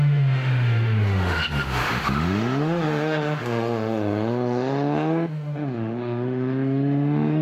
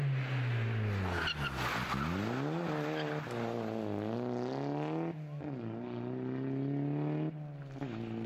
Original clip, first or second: second